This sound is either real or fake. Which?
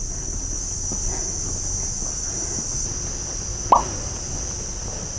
real